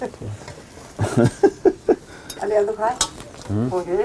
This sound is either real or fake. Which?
real